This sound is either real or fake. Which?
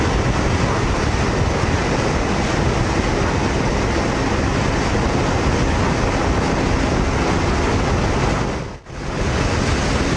real